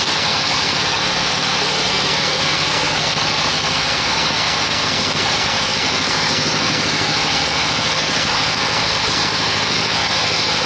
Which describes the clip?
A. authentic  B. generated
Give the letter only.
B